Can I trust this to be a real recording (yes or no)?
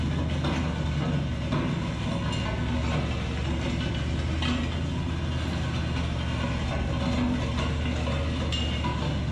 yes